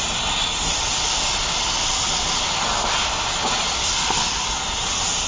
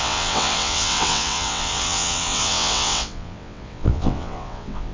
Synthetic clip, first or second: second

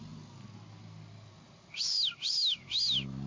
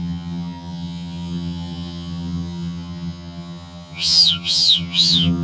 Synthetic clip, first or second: second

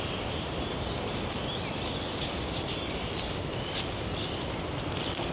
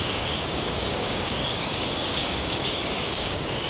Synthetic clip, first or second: second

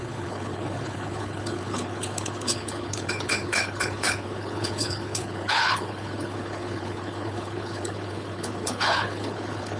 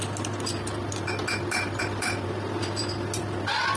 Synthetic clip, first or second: first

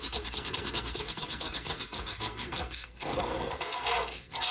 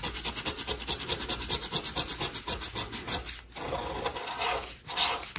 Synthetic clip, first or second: first